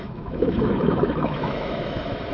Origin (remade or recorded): remade